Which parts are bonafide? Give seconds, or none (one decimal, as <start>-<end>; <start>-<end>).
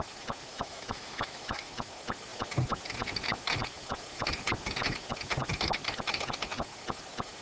0.0-0.5; 1.7-7.4